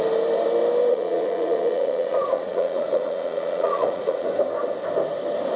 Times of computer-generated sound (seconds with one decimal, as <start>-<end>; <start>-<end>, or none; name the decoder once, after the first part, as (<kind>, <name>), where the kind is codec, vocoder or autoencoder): 0.9-4.3 (vocoder, Vocos)